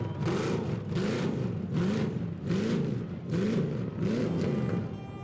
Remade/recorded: recorded